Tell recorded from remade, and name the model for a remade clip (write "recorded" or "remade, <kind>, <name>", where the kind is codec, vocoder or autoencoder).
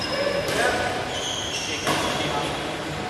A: recorded